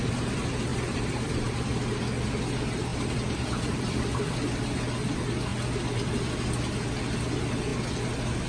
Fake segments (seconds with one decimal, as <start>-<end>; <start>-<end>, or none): 0.7-1.5; 2.9-4.6